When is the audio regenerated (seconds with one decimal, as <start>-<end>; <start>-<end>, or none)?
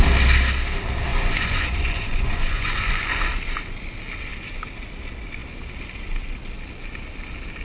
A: 1.1-3.2